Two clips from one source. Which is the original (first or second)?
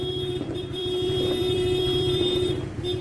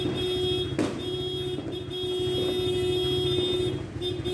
second